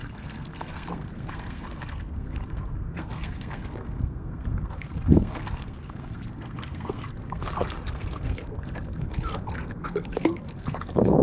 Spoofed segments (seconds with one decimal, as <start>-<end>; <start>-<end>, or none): 0.0-11.2